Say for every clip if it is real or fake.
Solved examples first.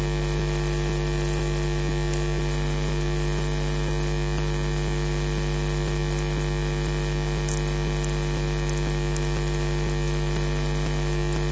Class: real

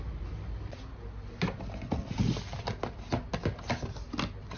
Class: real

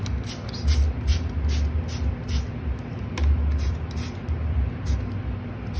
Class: real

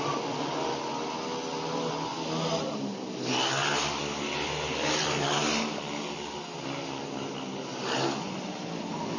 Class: real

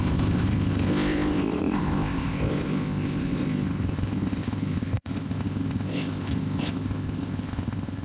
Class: fake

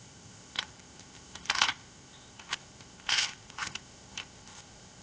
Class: fake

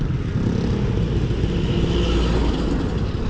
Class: real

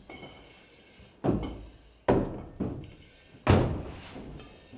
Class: real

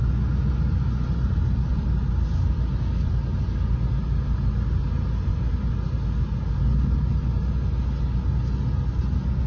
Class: real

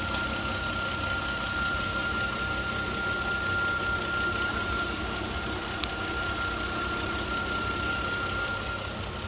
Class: real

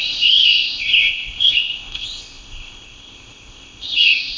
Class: fake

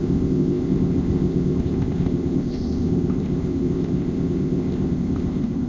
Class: fake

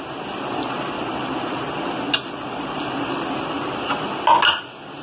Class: real